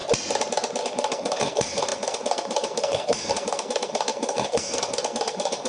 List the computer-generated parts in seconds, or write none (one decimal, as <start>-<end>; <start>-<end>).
0.8-5.7